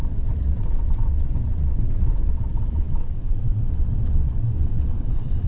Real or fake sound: fake